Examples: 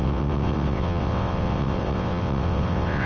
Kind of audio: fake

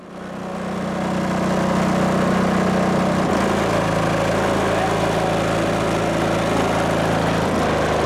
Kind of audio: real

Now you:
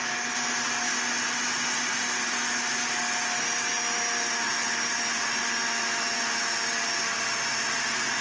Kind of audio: real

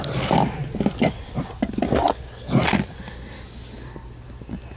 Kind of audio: real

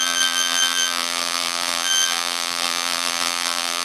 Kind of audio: fake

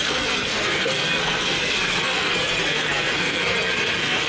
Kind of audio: fake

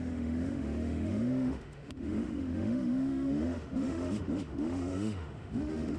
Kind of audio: fake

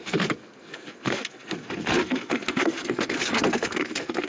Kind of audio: fake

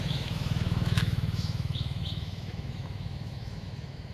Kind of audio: fake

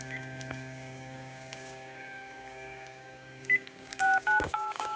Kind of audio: fake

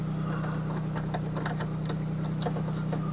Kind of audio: real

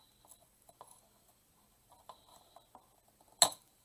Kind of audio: real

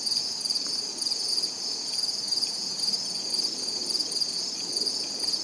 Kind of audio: fake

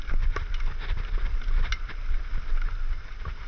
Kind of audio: real